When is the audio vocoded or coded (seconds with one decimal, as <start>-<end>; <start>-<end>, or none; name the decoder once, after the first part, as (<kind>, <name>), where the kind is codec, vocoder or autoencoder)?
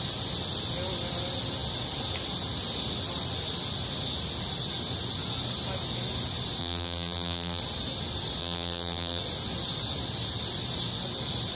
6.6-7.6 (vocoder, BigVGAN v2); 8.4-9.2